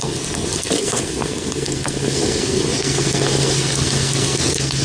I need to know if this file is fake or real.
fake